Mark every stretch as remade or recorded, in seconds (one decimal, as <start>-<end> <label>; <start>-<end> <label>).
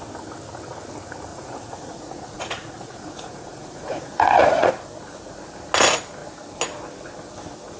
0.0-1.3 recorded; 1.3-4.7 remade; 4.7-7.8 recorded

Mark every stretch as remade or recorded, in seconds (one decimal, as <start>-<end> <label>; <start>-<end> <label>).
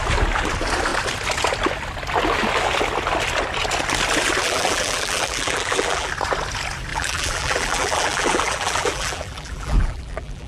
0.0-4.4 recorded; 4.4-6.1 remade; 6.1-6.9 recorded; 6.9-10.5 remade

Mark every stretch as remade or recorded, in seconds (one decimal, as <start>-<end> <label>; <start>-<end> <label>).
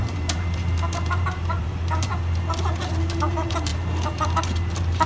0.0-2.1 remade; 2.1-2.9 recorded; 2.9-5.1 remade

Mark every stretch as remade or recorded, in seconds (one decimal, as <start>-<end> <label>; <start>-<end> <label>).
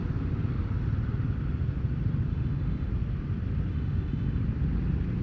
0.0-2.3 recorded; 2.3-2.9 remade; 2.9-3.7 recorded; 3.7-4.4 remade; 4.4-5.2 recorded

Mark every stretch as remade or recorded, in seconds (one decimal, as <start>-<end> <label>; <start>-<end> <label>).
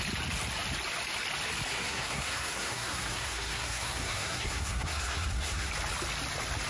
0.0-1.7 recorded; 1.7-5.7 remade; 5.7-6.7 recorded